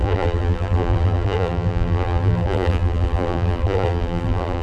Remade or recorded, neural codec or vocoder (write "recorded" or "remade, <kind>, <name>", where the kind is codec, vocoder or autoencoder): remade, vocoder, BigVGAN v2